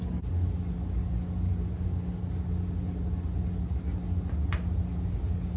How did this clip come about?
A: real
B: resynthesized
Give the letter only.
A